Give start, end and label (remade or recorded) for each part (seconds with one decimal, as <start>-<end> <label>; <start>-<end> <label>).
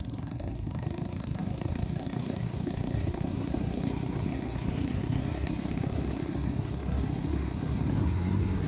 0.0-8.7 remade